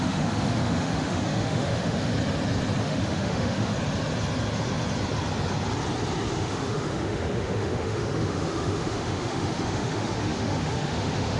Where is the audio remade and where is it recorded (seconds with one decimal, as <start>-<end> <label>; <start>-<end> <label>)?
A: 0.0-2.1 remade; 2.1-2.8 recorded; 2.8-3.7 remade; 3.7-6.3 recorded; 6.3-11.4 remade